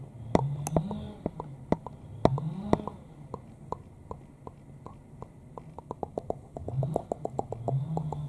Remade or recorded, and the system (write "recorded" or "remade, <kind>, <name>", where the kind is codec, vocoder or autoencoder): recorded